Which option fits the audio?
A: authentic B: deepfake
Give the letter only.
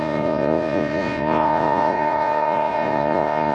B